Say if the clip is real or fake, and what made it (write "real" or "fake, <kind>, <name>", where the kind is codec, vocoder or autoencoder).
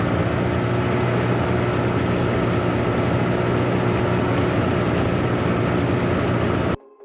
real